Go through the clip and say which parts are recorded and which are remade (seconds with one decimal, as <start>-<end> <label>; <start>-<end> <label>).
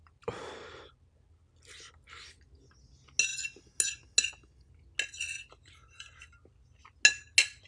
0.0-0.9 remade; 0.9-7.7 recorded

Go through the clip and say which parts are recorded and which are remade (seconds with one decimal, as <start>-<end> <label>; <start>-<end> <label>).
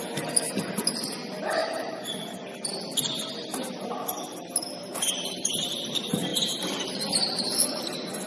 0.0-1.6 recorded; 1.6-2.4 remade; 2.4-4.9 recorded; 4.9-5.5 remade; 5.5-6.3 recorded; 6.3-6.9 remade; 6.9-8.3 recorded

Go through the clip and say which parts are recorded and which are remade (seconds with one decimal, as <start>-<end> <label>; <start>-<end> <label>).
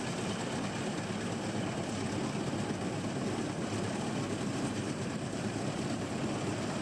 0.0-4.5 recorded; 4.5-6.1 remade; 6.1-6.8 recorded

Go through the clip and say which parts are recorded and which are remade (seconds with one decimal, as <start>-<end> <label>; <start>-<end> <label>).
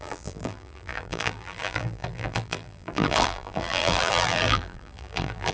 0.0-5.5 remade